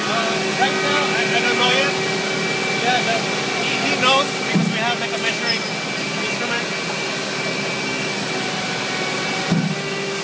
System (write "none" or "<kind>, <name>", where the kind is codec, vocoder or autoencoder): none